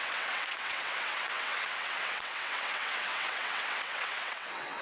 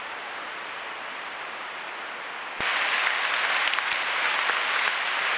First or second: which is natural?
second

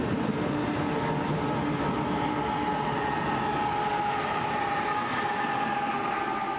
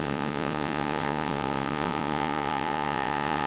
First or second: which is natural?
first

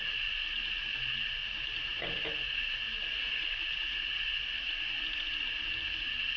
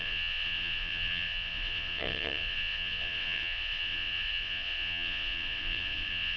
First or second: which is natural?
first